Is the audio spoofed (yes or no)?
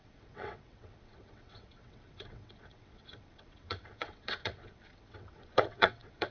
yes